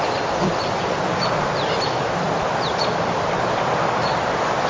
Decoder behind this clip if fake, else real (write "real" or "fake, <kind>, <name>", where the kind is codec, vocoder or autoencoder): real